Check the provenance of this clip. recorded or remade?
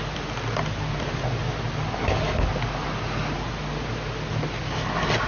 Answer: recorded